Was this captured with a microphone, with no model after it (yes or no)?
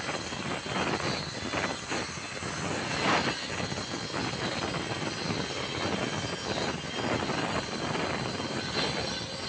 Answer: yes